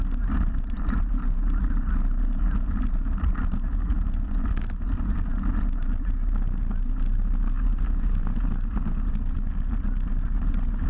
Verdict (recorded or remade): recorded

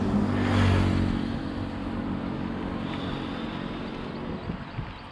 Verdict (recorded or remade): recorded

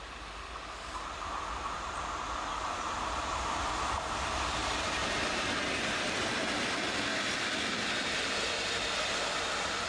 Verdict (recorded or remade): recorded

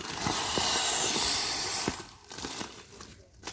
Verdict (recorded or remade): recorded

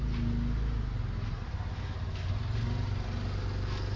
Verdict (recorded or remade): recorded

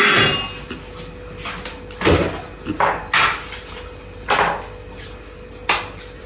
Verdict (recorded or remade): recorded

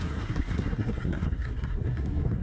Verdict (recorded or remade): remade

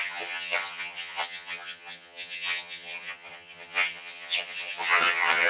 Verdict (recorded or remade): remade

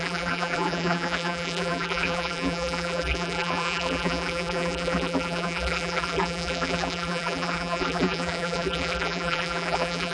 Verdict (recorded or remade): remade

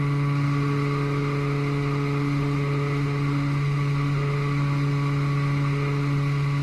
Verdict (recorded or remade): recorded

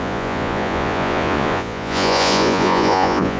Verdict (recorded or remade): remade